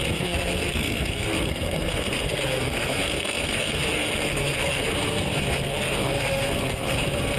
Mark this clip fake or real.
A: fake